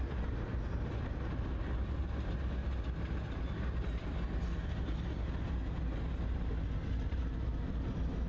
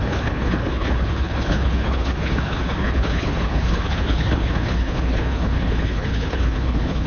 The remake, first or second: second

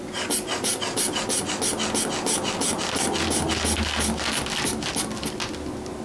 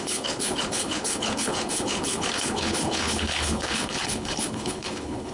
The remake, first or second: second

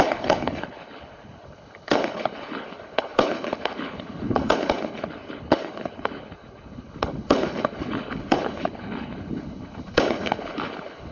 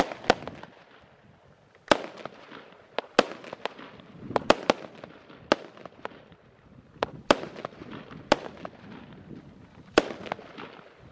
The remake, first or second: first